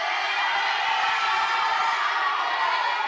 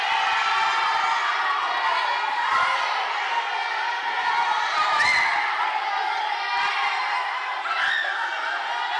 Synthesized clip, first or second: first